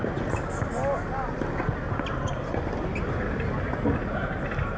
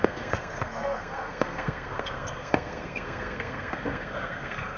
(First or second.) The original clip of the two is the first